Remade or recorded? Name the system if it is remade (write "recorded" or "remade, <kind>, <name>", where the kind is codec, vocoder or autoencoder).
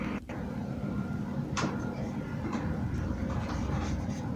remade, vocoder, BigVGAN v2